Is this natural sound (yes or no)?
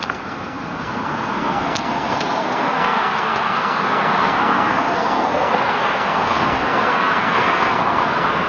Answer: no